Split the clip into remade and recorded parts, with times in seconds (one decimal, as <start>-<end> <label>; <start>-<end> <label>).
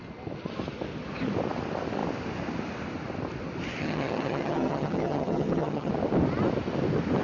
0.0-3.8 recorded; 3.8-5.9 remade; 5.9-7.2 recorded